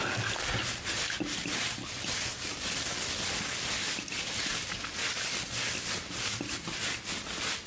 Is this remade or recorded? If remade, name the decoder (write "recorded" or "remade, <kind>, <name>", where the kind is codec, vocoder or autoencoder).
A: recorded